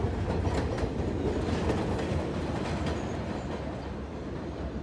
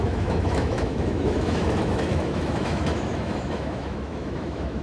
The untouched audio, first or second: first